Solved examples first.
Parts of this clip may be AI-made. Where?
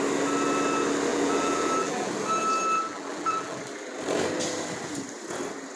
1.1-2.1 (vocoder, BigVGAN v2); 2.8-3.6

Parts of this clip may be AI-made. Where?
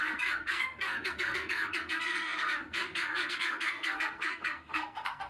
0.0-5.3 (codec, SNAC)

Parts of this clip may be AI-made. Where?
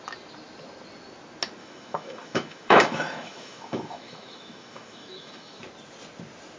1.6-5.6 (autoencoder, DAC-VAE)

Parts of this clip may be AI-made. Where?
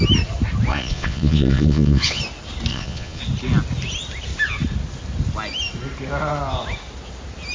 0.7-2.2 (vocoder, Vocos); 2.7-3.2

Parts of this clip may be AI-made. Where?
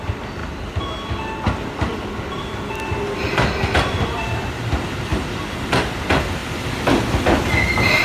none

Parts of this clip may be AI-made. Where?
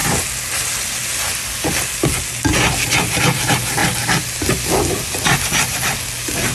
none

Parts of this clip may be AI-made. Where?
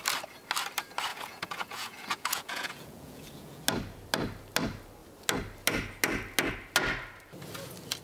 1.1-3.6 (vocoder, Vocos)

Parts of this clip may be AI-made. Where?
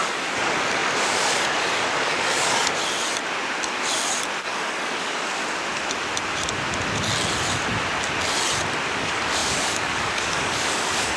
0.0-2.8 (codec, DAC); 4.4-5.4; 8.9-11.2